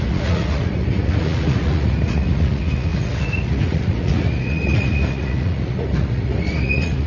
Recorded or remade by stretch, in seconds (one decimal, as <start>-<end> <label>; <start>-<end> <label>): 0.0-7.1 remade